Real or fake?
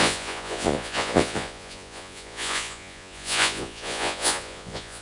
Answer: fake